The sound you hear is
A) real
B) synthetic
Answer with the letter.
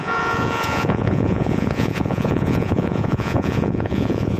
B